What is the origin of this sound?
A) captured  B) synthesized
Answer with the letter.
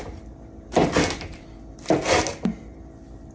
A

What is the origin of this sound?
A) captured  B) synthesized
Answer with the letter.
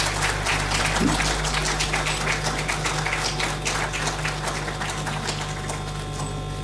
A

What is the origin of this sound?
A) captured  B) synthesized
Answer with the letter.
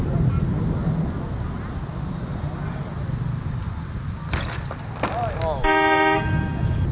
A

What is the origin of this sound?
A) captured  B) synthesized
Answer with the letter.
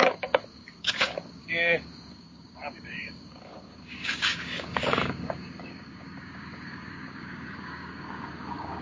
B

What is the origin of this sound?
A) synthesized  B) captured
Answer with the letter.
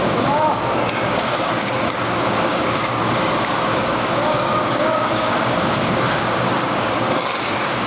A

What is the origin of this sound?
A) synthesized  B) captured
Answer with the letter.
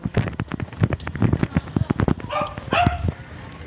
B